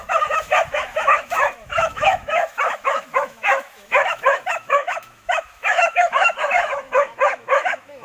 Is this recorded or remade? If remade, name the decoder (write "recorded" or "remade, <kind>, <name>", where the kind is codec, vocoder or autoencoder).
remade, autoencoder, DAC-VAE